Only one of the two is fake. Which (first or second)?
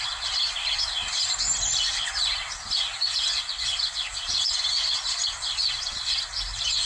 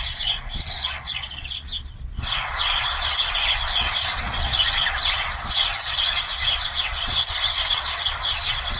second